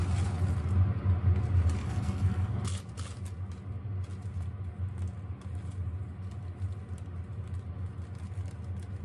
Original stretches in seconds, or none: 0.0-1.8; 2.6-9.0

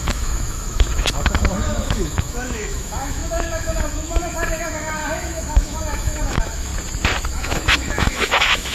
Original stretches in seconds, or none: 6.7-7.3

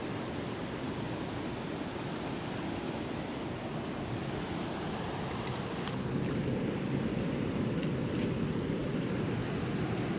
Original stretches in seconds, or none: 0.0-10.2

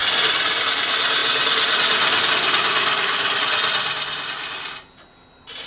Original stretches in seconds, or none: 0.0-5.7

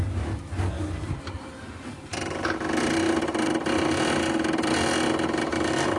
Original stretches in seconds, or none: 0.0-2.1; 3.5-6.0

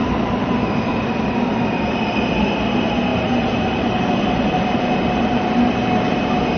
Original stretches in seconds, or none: 1.4-3.1; 5.6-6.6

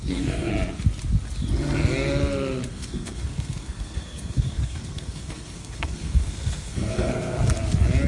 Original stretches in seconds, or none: 0.5-2.7; 7.5-8.1

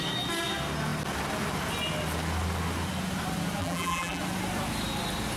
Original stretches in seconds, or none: 0.0-3.6; 4.2-5.4